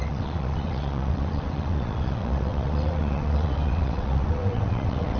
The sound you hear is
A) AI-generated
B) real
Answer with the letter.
A